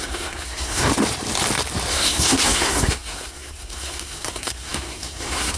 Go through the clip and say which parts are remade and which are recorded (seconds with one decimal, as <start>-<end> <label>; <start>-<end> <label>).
0.0-0.9 remade; 0.9-1.9 recorded; 1.9-5.6 remade